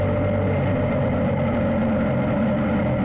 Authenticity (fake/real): real